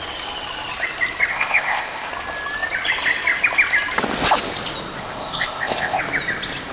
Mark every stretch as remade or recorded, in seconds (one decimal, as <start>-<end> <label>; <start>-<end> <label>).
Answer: 0.0-1.3 recorded; 1.3-2.1 remade; 2.1-5.0 recorded; 5.0-6.0 remade; 6.0-6.7 recorded